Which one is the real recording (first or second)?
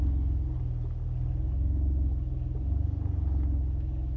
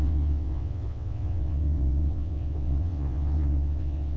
first